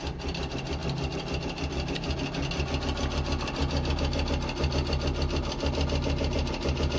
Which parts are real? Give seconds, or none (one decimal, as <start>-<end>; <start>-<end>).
0.0-7.0

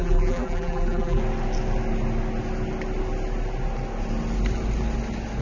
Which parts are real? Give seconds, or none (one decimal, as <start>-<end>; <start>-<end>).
1.2-5.4

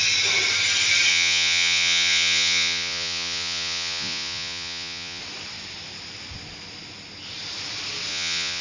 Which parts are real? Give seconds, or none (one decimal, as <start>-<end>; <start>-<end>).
0.0-1.1; 5.2-8.1

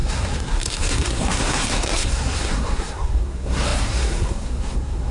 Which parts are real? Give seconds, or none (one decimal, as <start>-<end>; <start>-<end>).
none

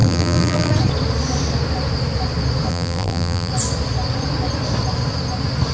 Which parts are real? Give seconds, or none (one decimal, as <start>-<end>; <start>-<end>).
0.7-2.7; 3.5-5.7

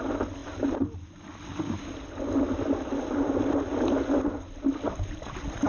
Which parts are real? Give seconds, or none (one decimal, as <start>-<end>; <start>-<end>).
0.0-0.4; 1.3-5.7

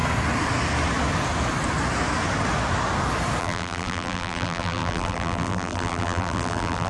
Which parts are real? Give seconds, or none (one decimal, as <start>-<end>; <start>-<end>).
0.0-3.4